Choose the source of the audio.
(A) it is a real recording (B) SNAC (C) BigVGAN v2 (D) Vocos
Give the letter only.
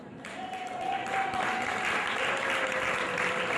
C